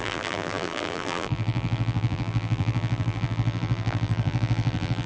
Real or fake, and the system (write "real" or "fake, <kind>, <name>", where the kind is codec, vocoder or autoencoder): fake, vocoder, BigVGAN v2